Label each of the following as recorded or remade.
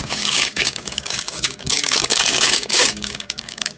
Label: remade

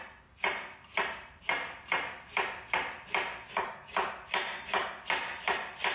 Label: recorded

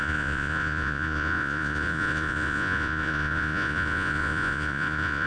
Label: remade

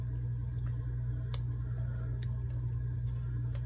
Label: recorded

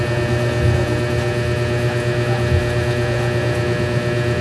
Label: recorded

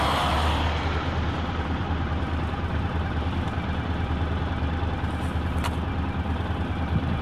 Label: recorded